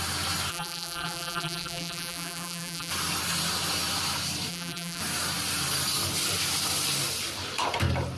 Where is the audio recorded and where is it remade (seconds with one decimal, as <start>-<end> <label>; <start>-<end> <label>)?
0.0-0.5 recorded; 0.5-2.9 remade; 2.9-4.5 recorded; 4.5-5.0 remade; 5.0-8.2 recorded